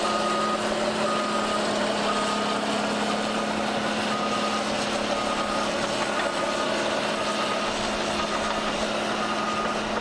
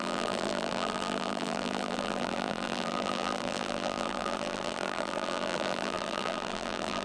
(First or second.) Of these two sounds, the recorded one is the first